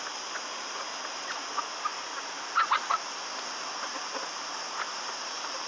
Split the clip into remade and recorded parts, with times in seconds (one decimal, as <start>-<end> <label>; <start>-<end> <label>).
0.0-5.7 recorded